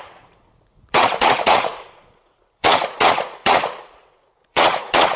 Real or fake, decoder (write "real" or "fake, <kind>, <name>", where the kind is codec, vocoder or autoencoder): fake, vocoder, Vocos